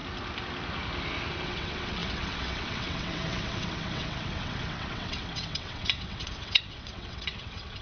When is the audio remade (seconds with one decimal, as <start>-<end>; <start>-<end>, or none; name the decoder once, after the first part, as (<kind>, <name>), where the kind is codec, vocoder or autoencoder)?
1.4-7.8 (vocoder, WaveNeXt)